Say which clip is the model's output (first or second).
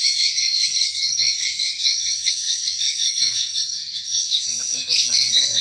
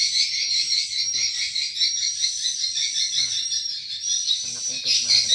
first